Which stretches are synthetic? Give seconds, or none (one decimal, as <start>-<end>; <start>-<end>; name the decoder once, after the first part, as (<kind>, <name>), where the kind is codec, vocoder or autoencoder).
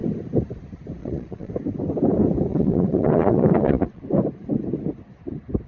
1.0-1.5 (vocoder, Vocos); 2.5-4.0